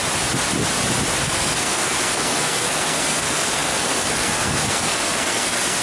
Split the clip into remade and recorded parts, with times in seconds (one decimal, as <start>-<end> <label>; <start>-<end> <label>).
0.0-1.2 recorded; 1.2-5.8 remade